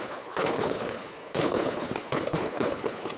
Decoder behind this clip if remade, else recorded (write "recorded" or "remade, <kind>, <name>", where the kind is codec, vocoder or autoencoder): remade, codec, HILCodec